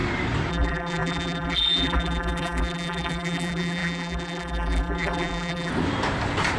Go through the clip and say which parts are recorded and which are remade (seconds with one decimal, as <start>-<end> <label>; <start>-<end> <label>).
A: 0.0-0.5 recorded; 0.5-5.7 remade; 5.7-6.6 recorded